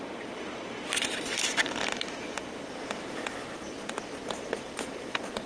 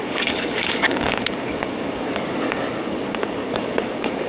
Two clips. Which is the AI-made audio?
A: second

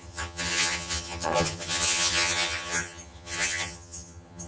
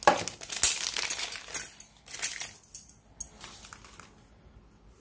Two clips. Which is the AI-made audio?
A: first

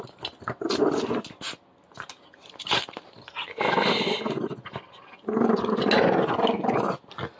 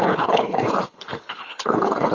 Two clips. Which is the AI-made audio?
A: second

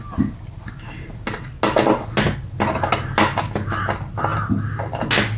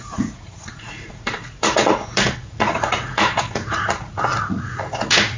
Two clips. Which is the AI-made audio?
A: second